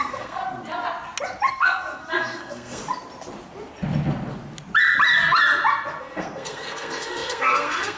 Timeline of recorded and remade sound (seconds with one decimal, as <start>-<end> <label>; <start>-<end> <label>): 0.0-0.4 remade; 0.4-1.5 recorded; 1.5-2.8 remade; 2.8-6.0 recorded; 6.0-8.0 remade